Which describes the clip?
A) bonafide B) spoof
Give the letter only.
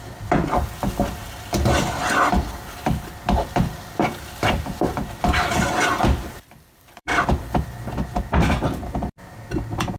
B